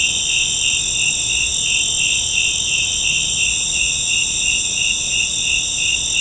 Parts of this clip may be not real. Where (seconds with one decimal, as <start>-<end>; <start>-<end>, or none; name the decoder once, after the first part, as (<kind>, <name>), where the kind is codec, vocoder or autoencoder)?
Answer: none